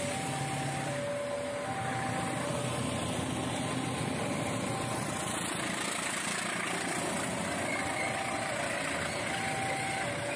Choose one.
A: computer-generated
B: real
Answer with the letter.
B